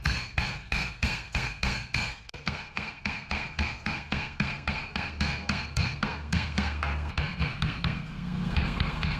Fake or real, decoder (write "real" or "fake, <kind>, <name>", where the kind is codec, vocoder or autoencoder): fake, codec, SNAC